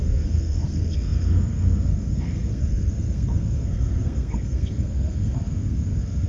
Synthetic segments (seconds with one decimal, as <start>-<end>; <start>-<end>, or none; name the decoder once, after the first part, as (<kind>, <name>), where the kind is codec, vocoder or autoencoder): 0.0-6.3 (codec, SNAC)